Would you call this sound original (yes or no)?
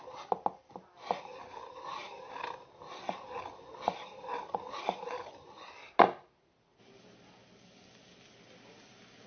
yes